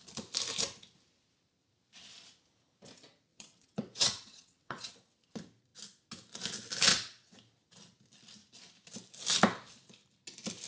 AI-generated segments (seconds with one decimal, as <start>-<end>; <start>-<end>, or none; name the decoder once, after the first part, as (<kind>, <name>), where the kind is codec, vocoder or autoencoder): 3.3-4.9 (vocoder, WaveNeXt); 6.9-7.4